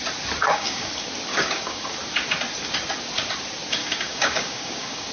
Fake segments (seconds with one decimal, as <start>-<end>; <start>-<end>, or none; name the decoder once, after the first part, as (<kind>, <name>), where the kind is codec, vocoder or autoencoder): 0.4-0.9 (codec, DAC); 1.3-1.9; 3.8-5.1